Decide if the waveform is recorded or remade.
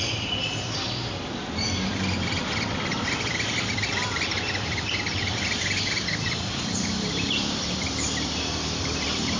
remade